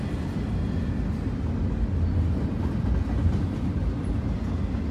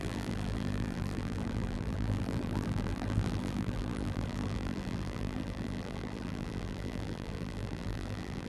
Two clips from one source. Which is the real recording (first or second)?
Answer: first